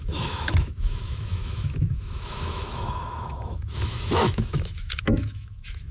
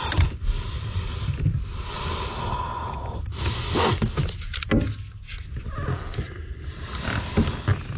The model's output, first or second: first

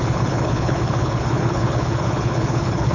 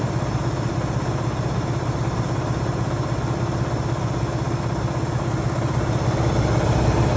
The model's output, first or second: first